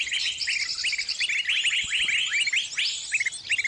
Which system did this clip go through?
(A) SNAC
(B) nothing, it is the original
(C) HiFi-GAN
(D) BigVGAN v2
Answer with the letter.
B